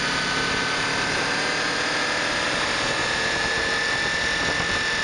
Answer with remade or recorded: recorded